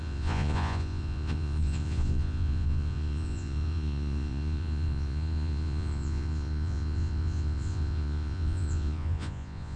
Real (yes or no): no